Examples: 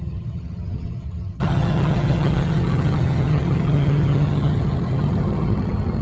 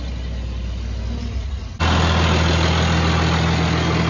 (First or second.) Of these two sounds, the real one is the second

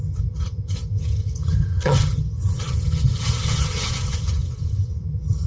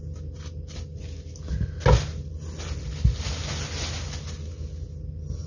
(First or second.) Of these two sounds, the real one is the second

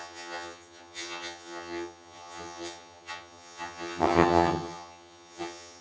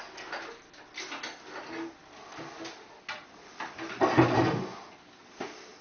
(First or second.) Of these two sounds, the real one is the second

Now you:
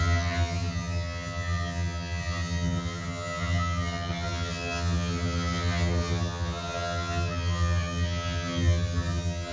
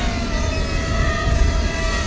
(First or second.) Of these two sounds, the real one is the second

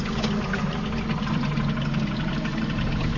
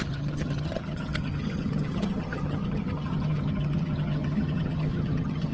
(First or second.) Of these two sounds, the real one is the first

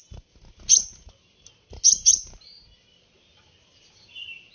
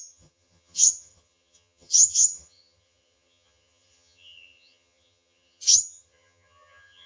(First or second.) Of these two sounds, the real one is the first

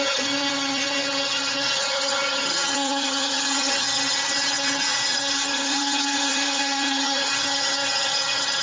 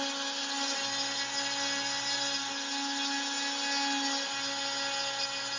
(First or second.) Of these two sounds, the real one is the second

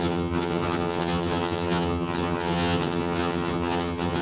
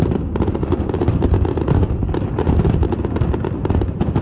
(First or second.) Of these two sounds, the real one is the second